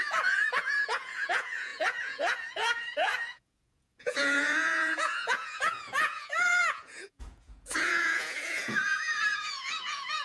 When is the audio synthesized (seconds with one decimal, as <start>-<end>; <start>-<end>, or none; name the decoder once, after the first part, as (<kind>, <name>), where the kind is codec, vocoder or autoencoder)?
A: 0.0-10.2 (vocoder, Vocos)